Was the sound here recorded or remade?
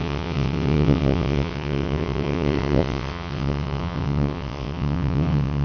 remade